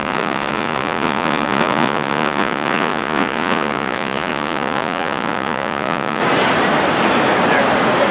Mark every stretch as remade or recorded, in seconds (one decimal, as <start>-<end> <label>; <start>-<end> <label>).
0.0-6.2 remade; 6.2-8.1 recorded